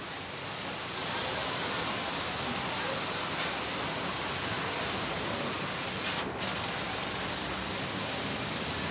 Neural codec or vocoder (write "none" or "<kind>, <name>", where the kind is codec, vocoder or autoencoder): none